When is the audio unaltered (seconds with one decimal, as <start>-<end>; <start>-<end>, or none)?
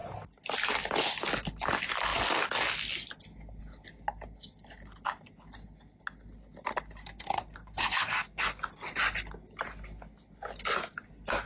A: 0.0-7.0; 8.5-11.5